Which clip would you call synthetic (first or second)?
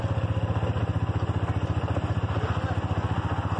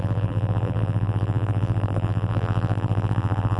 second